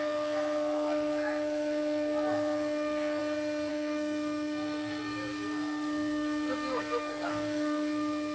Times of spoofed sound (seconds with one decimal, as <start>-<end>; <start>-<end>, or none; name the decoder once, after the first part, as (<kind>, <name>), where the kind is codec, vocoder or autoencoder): 0.0-3.2 (codec, SNAC); 3.7-8.3